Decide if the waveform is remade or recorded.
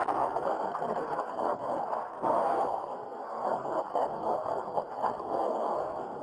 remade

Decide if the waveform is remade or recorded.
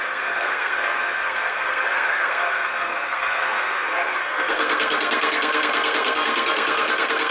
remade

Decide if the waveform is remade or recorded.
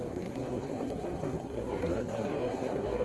remade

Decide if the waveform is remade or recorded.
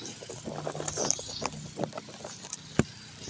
recorded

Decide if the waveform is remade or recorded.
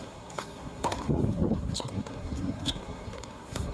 remade